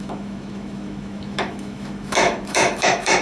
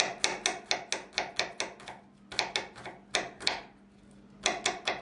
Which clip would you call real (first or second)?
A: second